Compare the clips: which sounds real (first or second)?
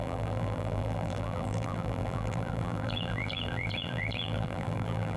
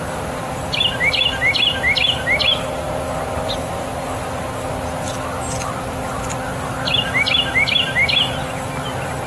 second